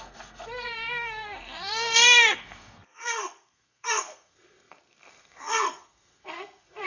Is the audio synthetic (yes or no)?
yes